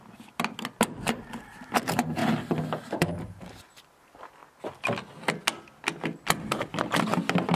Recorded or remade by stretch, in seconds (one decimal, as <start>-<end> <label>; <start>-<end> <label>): 0.0-1.8 recorded; 1.8-2.2 remade; 2.2-2.8 recorded; 2.8-4.4 remade; 4.4-7.6 recorded